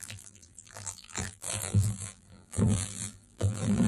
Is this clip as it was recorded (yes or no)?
no